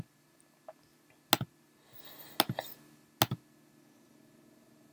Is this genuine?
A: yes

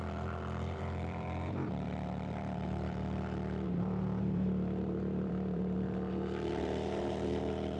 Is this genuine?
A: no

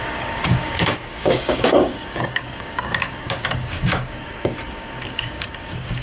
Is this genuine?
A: no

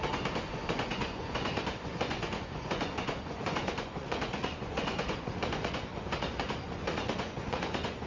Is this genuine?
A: no